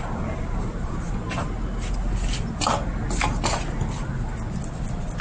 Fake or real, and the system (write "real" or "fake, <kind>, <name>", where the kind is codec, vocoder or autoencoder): real